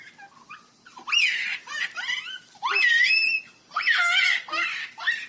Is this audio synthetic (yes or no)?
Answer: no